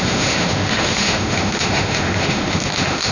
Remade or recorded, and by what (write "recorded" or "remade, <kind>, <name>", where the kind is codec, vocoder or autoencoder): remade, autoencoder, DAC-VAE